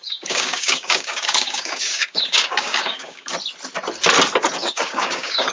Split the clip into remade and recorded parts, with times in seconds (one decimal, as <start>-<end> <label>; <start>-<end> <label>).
0.0-3.3 remade; 3.3-4.6 recorded; 4.6-5.5 remade